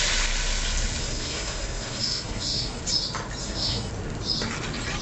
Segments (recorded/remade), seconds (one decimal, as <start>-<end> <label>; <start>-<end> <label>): 0.0-1.0 recorded; 1.0-2.8 remade; 2.8-3.4 recorded; 3.4-3.9 remade; 3.9-5.0 recorded